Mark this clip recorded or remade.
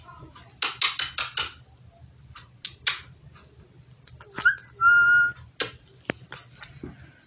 recorded